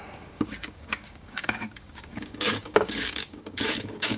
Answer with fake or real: fake